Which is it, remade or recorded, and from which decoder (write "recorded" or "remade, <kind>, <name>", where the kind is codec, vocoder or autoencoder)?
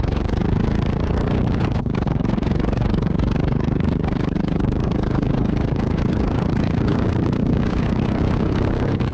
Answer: remade, codec, DAC